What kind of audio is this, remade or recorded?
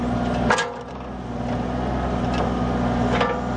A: recorded